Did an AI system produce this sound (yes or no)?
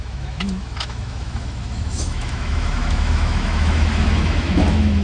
yes